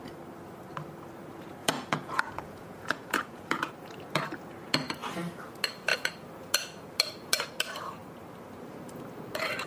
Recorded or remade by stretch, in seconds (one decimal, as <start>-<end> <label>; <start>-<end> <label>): 0.0-1.6 recorded; 1.6-3.7 remade; 3.7-9.7 recorded